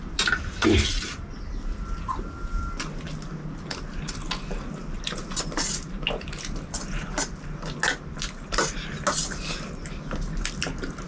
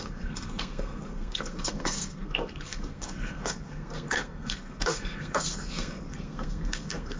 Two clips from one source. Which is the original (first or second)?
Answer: first